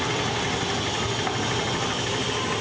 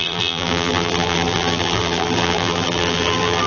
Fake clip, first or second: second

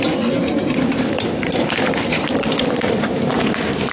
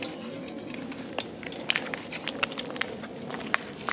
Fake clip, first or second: first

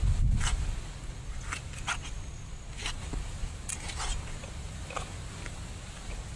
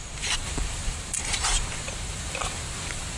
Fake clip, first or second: second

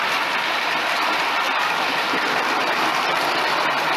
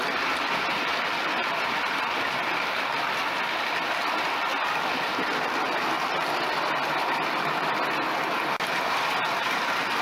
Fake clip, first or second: first